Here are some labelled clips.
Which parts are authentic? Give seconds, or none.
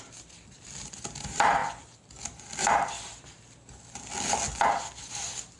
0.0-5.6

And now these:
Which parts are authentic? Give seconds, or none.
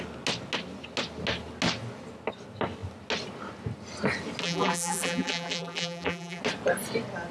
0.0-4.4; 6.4-7.3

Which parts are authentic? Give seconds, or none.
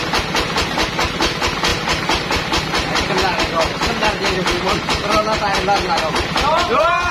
0.0-7.1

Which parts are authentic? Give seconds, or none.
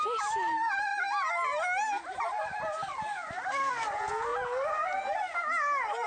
0.0-4.3; 5.0-6.1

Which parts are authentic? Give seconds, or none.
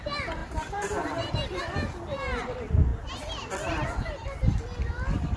0.0-0.4; 1.6-5.4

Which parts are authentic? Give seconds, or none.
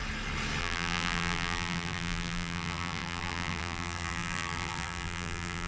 0.0-0.6